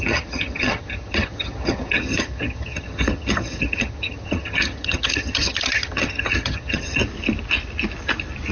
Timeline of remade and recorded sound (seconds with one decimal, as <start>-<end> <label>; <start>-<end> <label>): 0.0-7.0 remade; 7.0-8.5 recorded